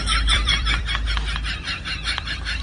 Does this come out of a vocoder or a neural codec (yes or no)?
yes